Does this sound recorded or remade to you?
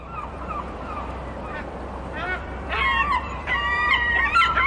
remade